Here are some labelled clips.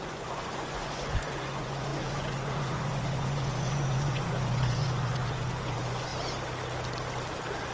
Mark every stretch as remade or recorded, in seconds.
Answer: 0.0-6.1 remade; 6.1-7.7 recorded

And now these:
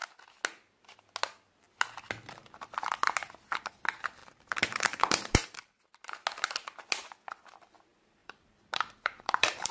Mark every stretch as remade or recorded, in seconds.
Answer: 0.0-4.2 recorded; 4.2-5.8 remade; 5.8-8.2 recorded; 8.2-9.7 remade

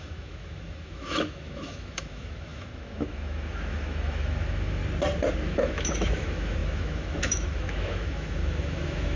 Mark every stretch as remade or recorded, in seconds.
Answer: 0.0-4.8 remade; 4.8-5.3 recorded; 5.3-9.2 remade

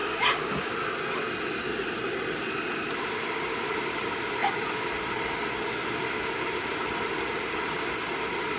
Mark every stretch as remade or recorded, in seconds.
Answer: 0.0-0.7 remade; 0.7-8.6 recorded

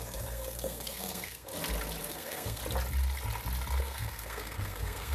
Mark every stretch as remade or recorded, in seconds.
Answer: 0.0-1.5 remade; 1.5-2.0 recorded; 2.0-2.6 remade; 2.6-3.8 recorded; 3.8-5.1 remade